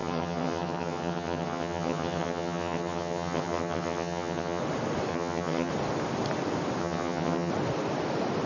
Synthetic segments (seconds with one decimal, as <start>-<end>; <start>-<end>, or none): 0.0-4.6; 5.1-5.7; 6.8-7.5

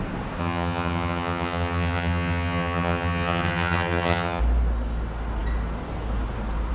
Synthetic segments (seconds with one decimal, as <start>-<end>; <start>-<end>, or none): 0.4-4.4